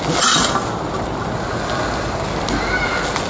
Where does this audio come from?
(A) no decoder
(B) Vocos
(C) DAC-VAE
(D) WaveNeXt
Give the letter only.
A